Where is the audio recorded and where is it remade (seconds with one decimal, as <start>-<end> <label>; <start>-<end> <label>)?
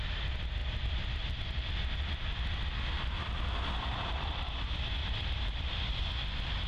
0.0-0.6 recorded; 0.6-4.6 remade; 4.6-5.0 recorded; 5.0-5.7 remade; 5.7-6.7 recorded